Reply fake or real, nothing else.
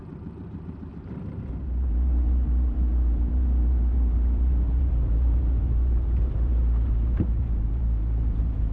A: fake